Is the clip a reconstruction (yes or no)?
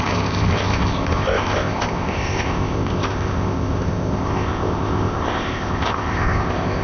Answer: yes